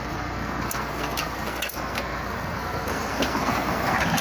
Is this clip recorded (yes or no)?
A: no